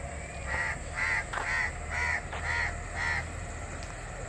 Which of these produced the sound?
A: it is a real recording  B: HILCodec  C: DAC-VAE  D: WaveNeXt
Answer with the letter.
A